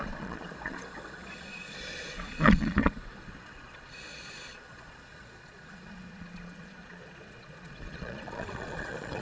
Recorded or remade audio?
remade